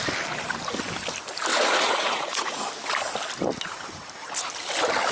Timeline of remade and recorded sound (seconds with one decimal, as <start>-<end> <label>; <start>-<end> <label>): 0.0-1.5 recorded; 1.5-2.6 remade; 2.6-5.1 recorded